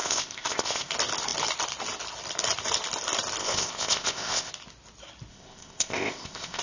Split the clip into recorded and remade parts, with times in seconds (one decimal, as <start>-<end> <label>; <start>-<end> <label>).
0.0-0.9 remade; 0.9-3.4 recorded; 3.4-4.5 remade; 4.5-5.3 recorded; 5.3-6.6 remade